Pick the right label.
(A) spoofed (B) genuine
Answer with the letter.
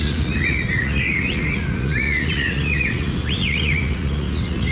A